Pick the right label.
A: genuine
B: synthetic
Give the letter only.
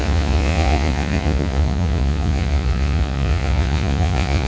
B